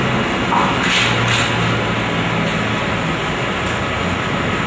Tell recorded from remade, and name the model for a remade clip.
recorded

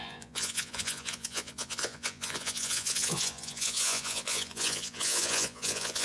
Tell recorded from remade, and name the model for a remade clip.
remade, vocoder, Vocos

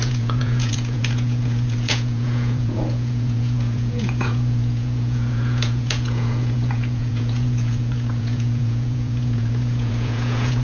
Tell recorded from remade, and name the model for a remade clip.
remade, vocoder, Vocos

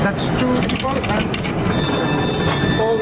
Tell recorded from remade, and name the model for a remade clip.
recorded